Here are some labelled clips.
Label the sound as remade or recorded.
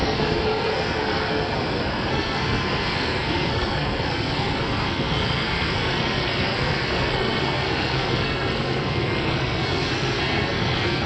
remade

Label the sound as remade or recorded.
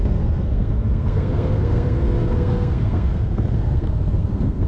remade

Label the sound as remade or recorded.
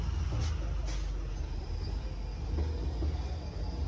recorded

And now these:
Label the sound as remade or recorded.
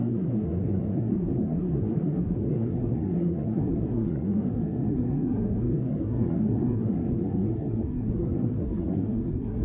remade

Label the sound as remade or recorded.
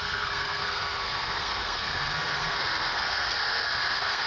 remade